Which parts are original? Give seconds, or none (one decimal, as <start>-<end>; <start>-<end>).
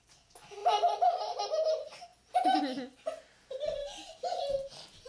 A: 0.0-3.8; 4.4-5.1